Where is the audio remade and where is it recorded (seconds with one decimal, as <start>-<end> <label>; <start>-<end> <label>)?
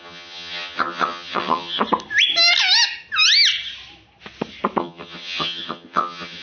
0.0-1.8 remade; 1.8-4.8 recorded; 4.8-6.4 remade